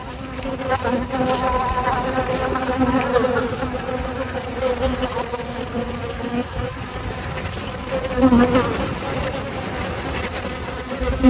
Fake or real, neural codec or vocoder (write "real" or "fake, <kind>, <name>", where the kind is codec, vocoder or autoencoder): real